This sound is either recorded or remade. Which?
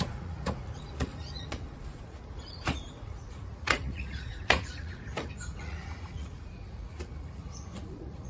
remade